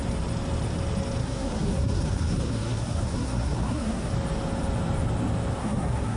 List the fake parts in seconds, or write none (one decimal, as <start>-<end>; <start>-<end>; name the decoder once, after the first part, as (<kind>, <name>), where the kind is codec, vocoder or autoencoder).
1.2-4.1 (codec, SNAC); 5.6-6.2